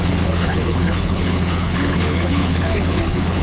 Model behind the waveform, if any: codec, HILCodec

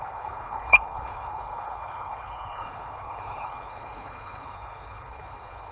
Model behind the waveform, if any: codec, HILCodec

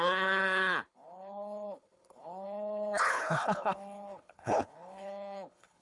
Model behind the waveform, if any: codec, HILCodec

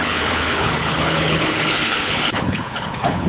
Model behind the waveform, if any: codec, HILCodec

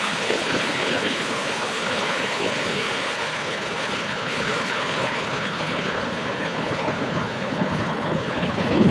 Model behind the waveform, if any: codec, HILCodec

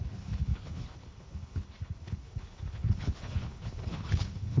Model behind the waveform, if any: codec, HILCodec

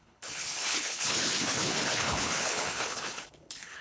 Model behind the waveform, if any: codec, HILCodec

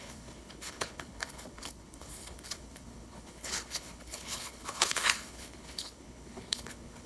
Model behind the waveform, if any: codec, HILCodec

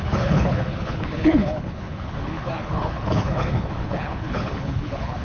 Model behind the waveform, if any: codec, HILCodec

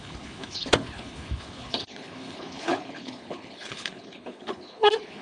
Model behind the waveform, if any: codec, HILCodec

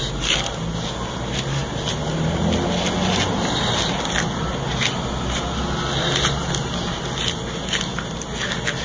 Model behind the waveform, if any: none